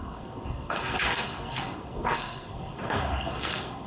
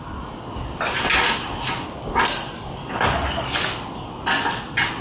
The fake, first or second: first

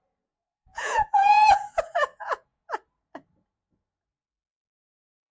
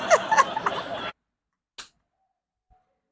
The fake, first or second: first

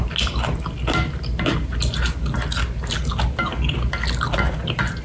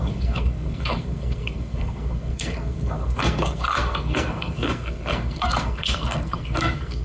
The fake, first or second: second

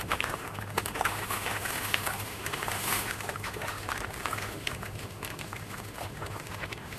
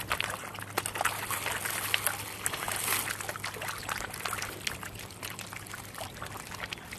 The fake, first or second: first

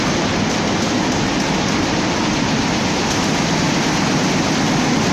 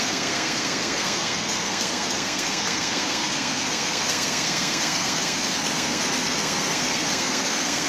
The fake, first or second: second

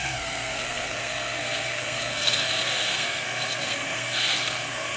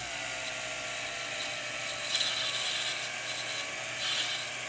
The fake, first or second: first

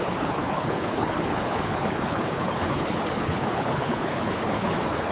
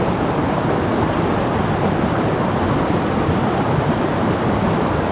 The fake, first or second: first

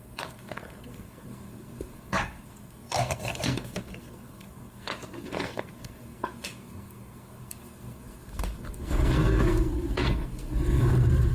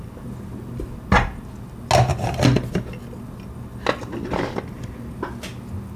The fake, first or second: first